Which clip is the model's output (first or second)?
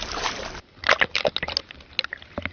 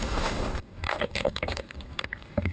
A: second